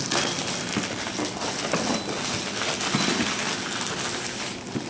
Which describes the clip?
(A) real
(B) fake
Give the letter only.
A